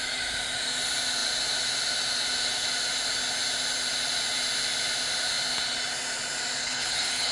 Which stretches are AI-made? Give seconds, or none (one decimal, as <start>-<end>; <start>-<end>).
6.6-7.3